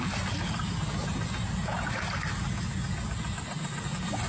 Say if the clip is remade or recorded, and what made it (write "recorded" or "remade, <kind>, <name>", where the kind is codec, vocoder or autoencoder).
recorded